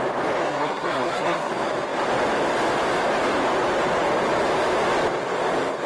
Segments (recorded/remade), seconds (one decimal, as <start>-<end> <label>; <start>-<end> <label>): 0.0-0.4 recorded; 0.4-1.5 remade; 1.5-5.9 recorded